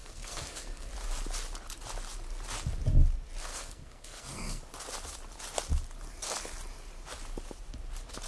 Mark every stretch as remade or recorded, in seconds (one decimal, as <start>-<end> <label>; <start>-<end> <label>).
0.0-0.9 remade; 0.9-3.5 recorded; 3.5-4.6 remade; 4.6-8.3 recorded